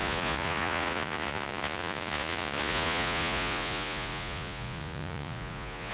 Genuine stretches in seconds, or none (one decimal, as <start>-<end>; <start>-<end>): none